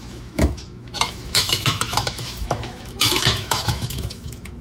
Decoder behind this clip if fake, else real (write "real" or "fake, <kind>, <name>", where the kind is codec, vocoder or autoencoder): fake, autoencoder, DAC-VAE